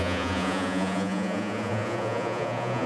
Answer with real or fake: fake